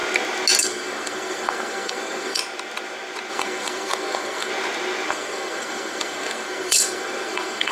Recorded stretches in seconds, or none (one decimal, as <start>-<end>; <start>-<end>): 0.0-0.6; 2.4-3.3; 4.5-5.1